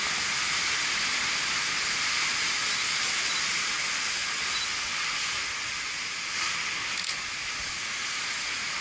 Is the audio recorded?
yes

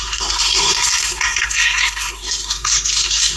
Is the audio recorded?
no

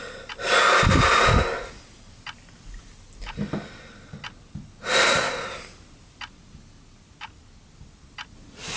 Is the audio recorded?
yes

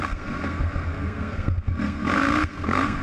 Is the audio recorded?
no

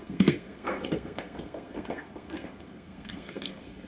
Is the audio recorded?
no